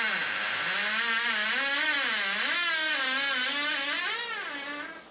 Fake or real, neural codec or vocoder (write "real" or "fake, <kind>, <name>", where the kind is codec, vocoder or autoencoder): real